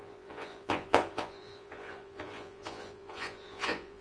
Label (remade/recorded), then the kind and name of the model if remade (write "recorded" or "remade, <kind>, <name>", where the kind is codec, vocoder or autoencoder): remade, vocoder, Vocos